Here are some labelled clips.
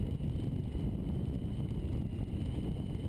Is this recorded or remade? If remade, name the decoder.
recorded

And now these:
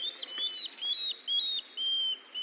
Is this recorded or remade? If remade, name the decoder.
recorded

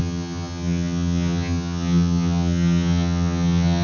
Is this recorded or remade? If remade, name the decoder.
remade, vocoder, HiFi-GAN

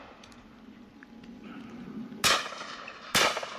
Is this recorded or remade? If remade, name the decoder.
recorded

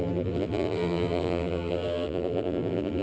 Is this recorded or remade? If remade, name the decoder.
remade, vocoder, BigVGAN v2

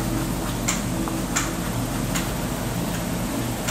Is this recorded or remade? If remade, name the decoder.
recorded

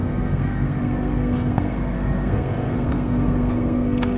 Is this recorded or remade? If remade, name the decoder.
remade, codec, SNAC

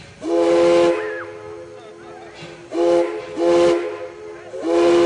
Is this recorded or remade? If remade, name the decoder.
recorded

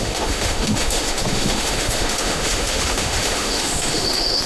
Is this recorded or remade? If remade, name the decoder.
remade, autoencoder, DAC-VAE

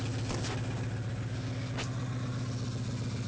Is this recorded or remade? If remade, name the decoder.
recorded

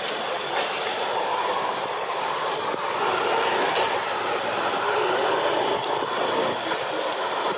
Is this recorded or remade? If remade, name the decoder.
recorded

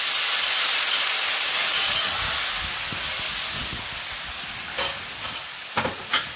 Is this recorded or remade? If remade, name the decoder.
recorded